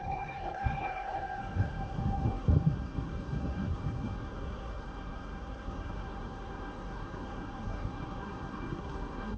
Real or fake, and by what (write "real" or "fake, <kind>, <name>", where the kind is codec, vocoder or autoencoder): fake, codec, SNAC